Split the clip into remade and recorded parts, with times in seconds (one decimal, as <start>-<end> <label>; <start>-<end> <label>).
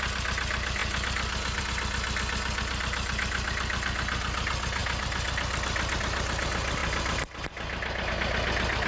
0.0-8.9 recorded